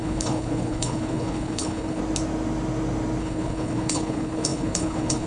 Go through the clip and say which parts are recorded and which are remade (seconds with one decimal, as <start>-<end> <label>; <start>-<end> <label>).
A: 0.0-2.0 remade; 2.0-3.2 recorded; 3.2-5.3 remade